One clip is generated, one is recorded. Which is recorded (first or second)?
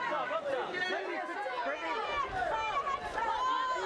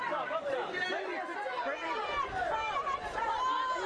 first